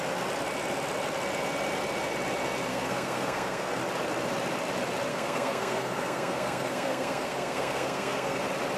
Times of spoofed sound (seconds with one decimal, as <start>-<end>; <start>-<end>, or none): 2.7-3.8; 5.1-8.4